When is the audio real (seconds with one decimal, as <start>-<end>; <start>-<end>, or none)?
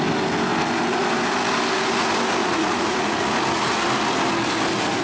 0.0-2.4; 3.3-5.0